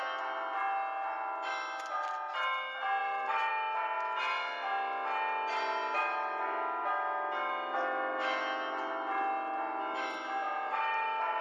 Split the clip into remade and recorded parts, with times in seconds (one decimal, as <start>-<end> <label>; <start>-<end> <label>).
0.0-3.0 recorded; 3.0-3.5 remade; 3.5-10.7 recorded; 10.7-11.4 remade

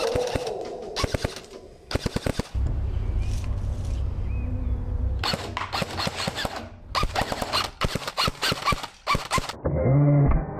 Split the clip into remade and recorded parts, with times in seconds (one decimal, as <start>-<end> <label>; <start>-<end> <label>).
0.0-9.8 recorded; 9.8-10.6 remade

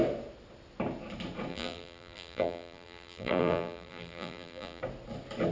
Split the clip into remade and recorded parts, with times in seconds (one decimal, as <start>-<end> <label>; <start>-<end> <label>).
0.0-1.5 recorded; 1.5-4.8 remade; 4.8-5.5 recorded

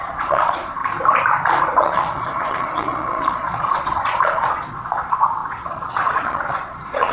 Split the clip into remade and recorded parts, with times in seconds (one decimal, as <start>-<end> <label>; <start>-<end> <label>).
0.0-0.8 remade; 0.8-1.8 recorded; 1.8-7.1 remade

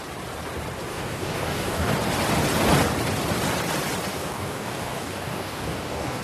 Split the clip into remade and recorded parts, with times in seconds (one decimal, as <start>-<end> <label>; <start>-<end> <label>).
0.0-0.9 recorded; 0.9-1.9 remade; 1.9-4.1 recorded; 4.1-6.2 remade

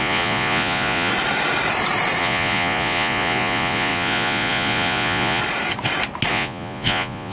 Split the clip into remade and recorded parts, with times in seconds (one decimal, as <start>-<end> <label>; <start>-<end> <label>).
0.0-1.1 remade; 1.1-2.2 recorded; 2.2-5.4 remade; 5.4-6.3 recorded; 6.3-7.3 remade

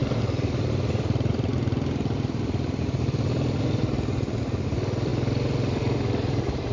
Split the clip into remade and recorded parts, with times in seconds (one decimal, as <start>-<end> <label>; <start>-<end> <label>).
0.0-1.3 recorded; 1.3-6.7 remade